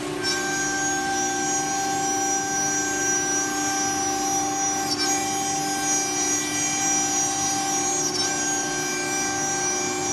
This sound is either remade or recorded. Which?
recorded